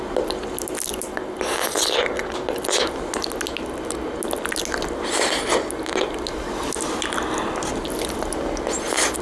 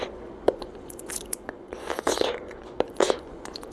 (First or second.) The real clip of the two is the first